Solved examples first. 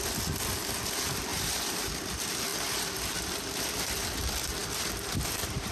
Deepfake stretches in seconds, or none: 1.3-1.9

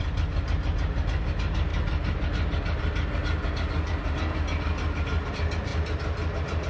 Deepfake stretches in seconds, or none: none

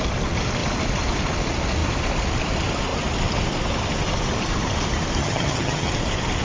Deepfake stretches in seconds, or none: 5.2-5.9

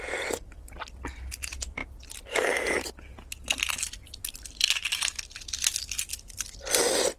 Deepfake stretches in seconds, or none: none

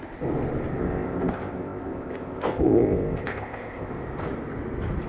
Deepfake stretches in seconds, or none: 0.8-3.9

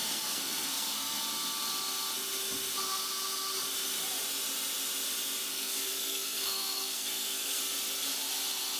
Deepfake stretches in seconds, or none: 0.0-1.2; 5.5-7.6